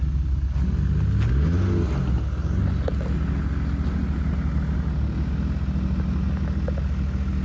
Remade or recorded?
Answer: recorded